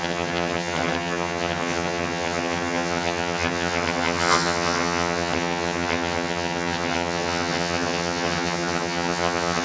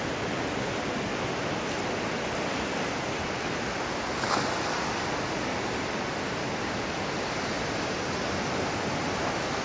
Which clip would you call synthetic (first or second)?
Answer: first